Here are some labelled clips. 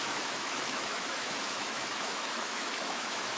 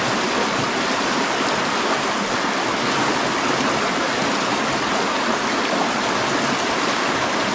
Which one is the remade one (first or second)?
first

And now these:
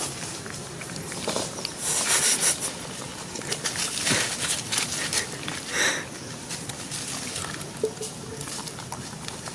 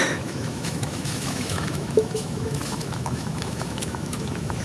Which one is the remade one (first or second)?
second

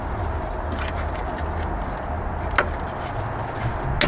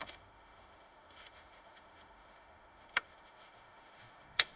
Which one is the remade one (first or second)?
second